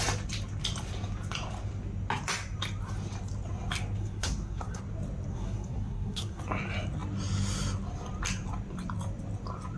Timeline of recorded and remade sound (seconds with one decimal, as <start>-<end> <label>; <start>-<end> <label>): 0.0-4.0 recorded; 4.0-4.8 remade; 4.8-5.3 recorded; 5.3-6.4 remade; 6.4-9.8 recorded